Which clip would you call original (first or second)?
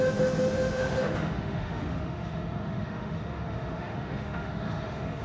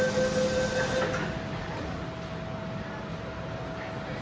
second